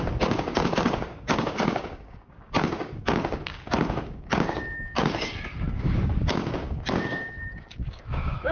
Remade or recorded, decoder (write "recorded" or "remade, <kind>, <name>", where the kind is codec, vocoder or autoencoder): remade, codec, DAC